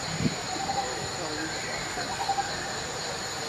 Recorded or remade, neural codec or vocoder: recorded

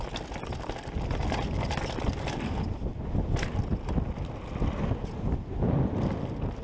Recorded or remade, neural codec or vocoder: recorded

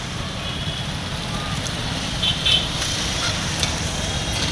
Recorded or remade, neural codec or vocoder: remade, vocoder, BigVGAN v2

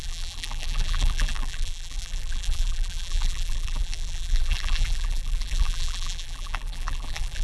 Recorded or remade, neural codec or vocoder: remade, vocoder, BigVGAN v2